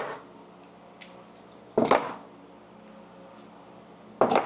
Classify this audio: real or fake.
real